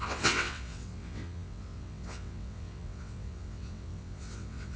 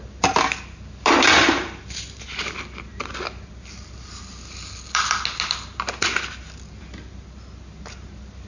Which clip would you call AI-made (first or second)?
first